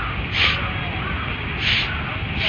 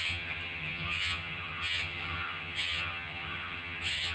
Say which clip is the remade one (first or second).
second